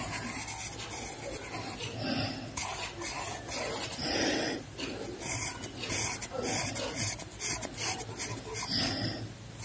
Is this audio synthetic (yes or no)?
no